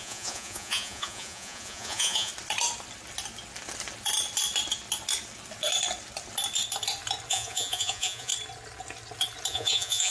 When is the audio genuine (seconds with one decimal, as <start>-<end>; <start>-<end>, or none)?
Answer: 2.3-7.3; 8.3-9.5